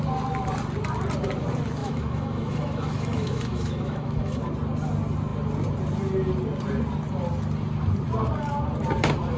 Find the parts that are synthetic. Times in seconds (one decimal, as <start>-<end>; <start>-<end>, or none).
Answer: 1.8-4.4